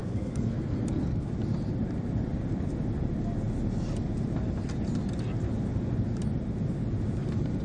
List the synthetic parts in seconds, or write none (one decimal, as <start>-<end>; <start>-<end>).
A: 0.0-1.3